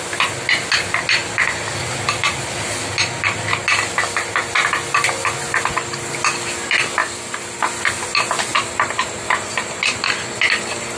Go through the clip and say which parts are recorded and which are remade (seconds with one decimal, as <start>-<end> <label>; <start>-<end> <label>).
0.0-7.0 recorded; 7.0-7.6 remade; 7.6-8.5 recorded; 8.5-9.3 remade; 9.3-11.0 recorded